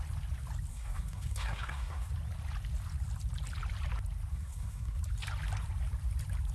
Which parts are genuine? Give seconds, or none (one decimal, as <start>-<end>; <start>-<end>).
0.0-0.7; 2.1-4.3; 5.0-6.5